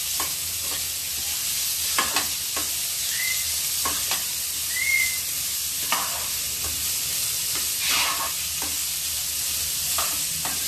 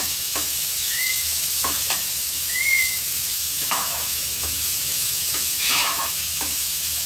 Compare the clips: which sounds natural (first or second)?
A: first